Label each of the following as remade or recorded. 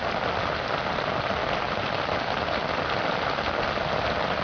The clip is recorded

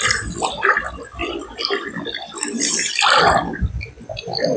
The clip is recorded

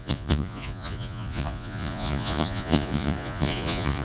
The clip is remade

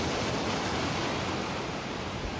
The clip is recorded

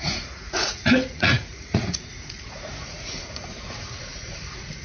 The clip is remade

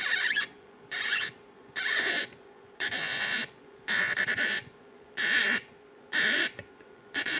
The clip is remade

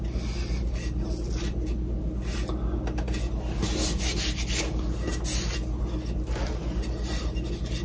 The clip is recorded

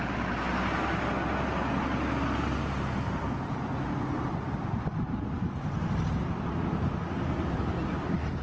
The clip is recorded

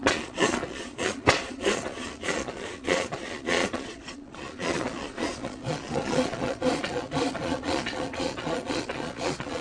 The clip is remade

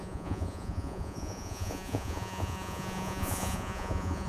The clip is remade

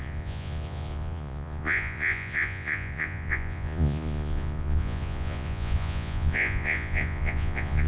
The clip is remade